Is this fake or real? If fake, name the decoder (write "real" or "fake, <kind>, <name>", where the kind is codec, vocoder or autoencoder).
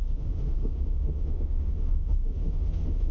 fake, autoencoder, DAC-VAE